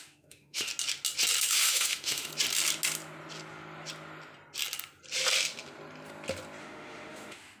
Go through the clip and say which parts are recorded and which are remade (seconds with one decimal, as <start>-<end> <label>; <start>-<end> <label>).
0.0-0.7 remade; 0.7-1.5 recorded; 1.5-2.3 remade; 2.3-6.6 recorded; 6.6-7.6 remade